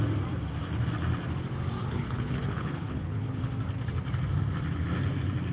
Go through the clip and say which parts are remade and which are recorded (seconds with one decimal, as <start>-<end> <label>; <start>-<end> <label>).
0.0-1.8 recorded; 1.8-3.4 remade; 3.4-5.5 recorded